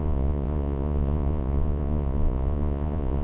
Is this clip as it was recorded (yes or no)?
no